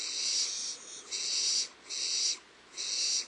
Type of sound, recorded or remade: recorded